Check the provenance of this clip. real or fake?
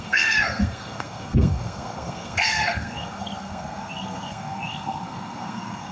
fake